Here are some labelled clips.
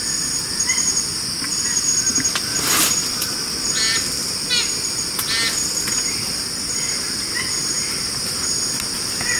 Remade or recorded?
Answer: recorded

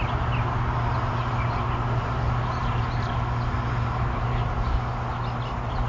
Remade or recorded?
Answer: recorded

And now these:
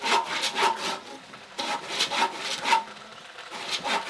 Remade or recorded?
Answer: recorded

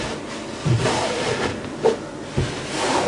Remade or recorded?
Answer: recorded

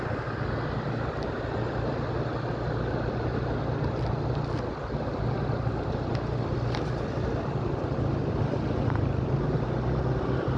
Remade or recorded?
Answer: recorded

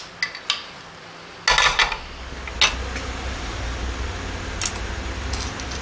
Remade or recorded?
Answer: recorded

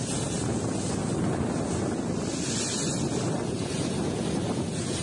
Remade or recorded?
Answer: recorded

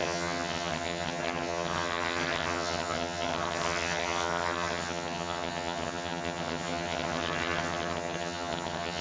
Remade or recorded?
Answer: remade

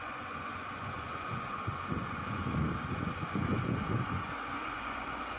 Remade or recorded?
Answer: remade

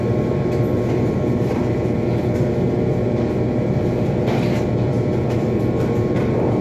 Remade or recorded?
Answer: recorded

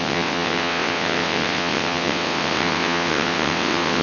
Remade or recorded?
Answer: remade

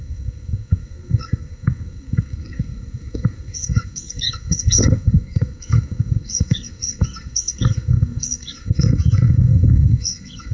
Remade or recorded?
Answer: remade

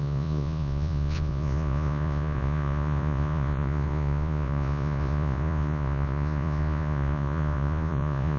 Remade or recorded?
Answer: remade